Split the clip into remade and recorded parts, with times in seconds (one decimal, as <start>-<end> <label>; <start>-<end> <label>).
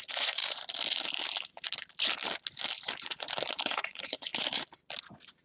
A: 0.0-0.4 remade; 0.4-3.6 recorded; 3.6-4.3 remade; 4.3-5.0 recorded; 5.0-5.4 remade